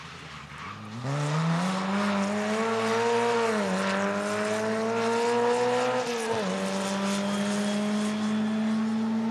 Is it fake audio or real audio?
real